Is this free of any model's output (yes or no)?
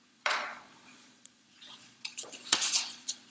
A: no